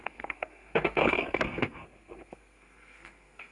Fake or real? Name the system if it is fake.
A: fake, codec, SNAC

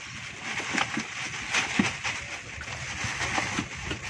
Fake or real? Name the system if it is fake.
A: real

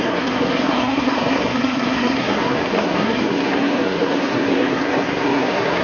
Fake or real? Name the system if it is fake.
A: fake, codec, SNAC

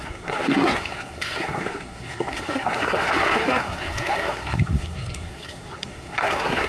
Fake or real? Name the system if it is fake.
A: fake, codec, SNAC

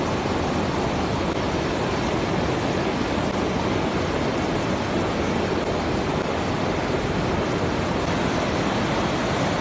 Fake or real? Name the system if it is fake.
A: real